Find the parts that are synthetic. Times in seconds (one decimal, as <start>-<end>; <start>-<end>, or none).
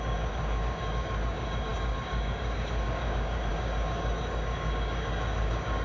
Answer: 0.0-5.8